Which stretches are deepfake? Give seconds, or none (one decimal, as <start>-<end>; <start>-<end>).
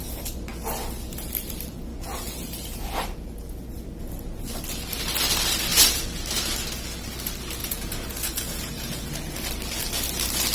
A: 1.9-3.7; 7.6-9.3